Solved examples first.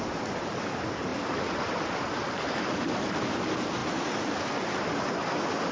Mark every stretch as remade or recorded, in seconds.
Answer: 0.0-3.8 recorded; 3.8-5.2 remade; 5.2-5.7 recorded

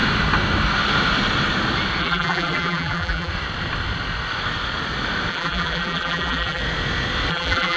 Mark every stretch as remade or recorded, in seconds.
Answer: 0.0-2.0 recorded; 2.0-3.3 remade; 3.3-5.3 recorded; 5.3-6.6 remade; 6.6-7.3 recorded; 7.3-7.8 remade

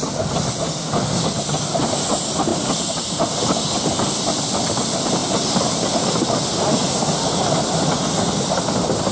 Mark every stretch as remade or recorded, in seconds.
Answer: 0.0-6.8 recorded; 6.8-7.4 remade; 7.4-9.1 recorded